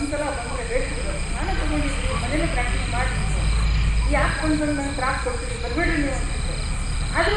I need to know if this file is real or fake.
real